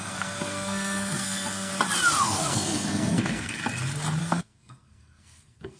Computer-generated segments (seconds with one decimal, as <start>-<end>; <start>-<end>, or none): 0.0-1.7; 2.2-3.6; 4.2-5.8